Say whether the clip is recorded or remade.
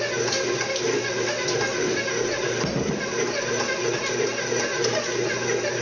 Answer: recorded